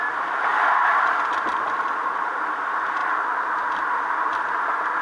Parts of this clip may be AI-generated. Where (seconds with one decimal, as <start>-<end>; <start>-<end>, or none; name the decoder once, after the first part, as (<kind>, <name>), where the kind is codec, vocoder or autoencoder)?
0.5-1.2 (vocoder, BigVGAN v2); 3.0-4.0